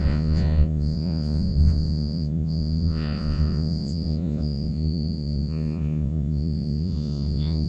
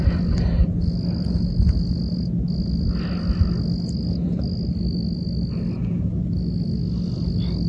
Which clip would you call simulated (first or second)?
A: first